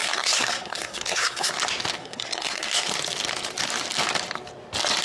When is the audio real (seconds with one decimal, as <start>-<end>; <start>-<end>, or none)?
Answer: 1.5-2.0; 2.9-5.0